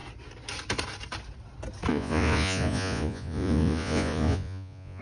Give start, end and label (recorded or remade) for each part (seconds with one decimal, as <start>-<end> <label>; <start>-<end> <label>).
0.0-1.9 recorded; 1.9-5.0 remade